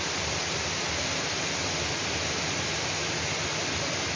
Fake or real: real